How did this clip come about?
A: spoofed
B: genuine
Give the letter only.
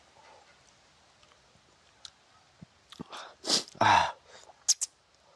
B